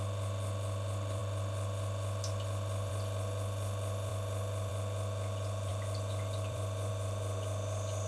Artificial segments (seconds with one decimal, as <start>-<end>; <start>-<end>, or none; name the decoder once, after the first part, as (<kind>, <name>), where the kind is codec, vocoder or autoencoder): 1.2-2.9 (vocoder, BigVGAN v2); 4.1-4.7; 5.7-6.9